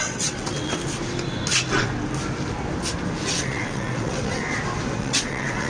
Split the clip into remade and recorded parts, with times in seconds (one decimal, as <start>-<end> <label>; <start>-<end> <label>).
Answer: 0.0-0.8 remade; 0.8-3.3 recorded; 3.3-4.4 remade; 4.4-5.0 recorded; 5.0-5.7 remade